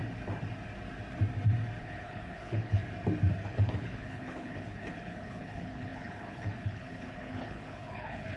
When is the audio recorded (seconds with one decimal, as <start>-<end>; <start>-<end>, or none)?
0.0-1.8; 2.8-3.4